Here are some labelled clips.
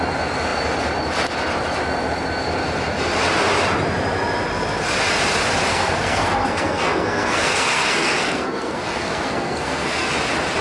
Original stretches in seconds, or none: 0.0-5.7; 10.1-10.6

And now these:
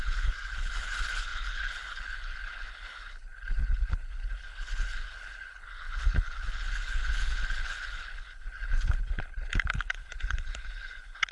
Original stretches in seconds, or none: none

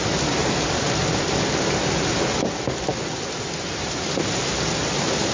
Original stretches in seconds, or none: 0.0-5.3

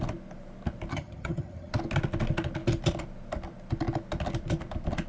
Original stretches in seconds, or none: 0.0-0.9; 1.7-5.1

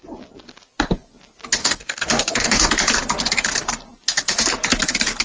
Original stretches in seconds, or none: 0.0-1.6; 2.7-5.2